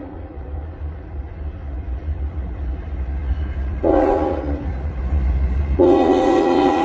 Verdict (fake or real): fake